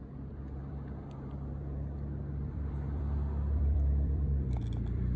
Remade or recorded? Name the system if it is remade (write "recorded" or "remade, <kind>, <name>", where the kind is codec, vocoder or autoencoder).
remade, vocoder, BigVGAN v2